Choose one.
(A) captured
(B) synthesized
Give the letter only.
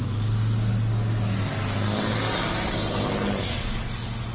A